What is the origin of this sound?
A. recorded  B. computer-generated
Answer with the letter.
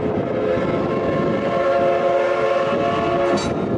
A